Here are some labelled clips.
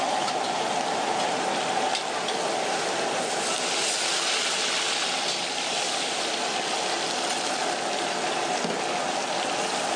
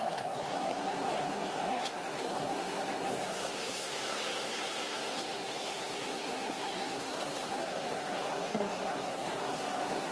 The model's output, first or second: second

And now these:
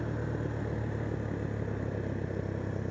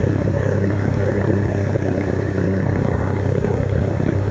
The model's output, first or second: second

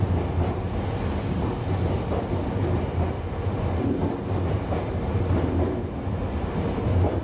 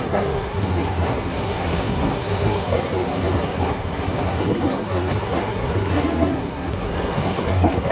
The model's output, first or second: second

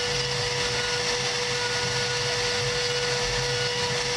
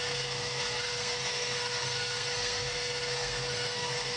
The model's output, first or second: second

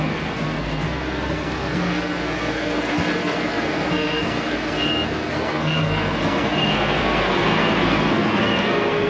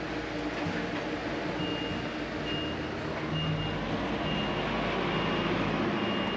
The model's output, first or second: first